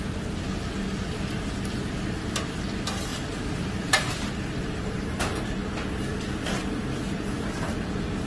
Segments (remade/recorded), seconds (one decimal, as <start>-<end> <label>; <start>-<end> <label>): 0.0-3.1 recorded; 3.1-5.4 remade; 5.4-8.3 recorded